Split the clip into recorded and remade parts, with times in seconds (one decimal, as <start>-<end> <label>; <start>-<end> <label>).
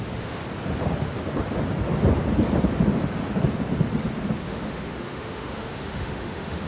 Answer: 0.0-0.4 remade; 0.4-4.4 recorded; 4.4-6.7 remade